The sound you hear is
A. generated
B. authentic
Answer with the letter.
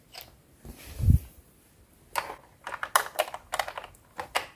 B